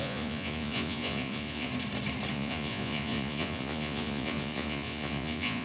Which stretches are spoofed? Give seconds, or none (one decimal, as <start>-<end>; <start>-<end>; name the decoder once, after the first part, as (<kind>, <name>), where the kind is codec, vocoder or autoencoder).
0.0-1.7 (vocoder, Vocos); 2.3-5.6